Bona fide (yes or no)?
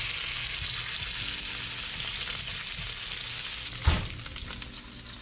yes